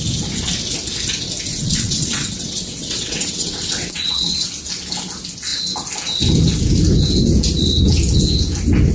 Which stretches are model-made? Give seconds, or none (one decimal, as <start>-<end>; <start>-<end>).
1.5-4.5